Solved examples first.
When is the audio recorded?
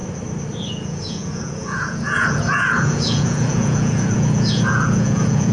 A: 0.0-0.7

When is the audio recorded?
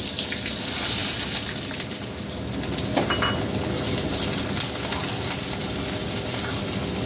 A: 0.0-7.1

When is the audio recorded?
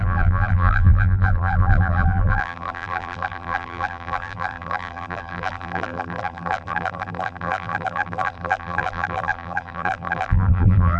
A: none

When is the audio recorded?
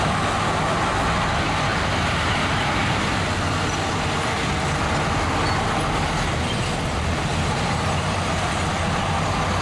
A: 0.0-1.7; 3.2-7.3; 8.4-9.6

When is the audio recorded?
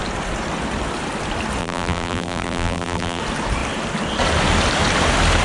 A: 0.0-1.6; 3.2-5.4